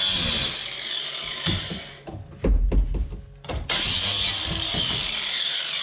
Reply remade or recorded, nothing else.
recorded